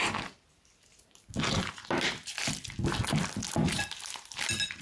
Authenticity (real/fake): real